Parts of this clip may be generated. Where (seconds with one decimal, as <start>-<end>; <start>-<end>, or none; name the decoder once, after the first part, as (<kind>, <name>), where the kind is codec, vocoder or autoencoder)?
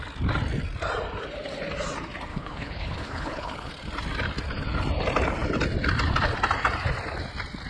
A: 2.3-3.7 (codec, HILCodec)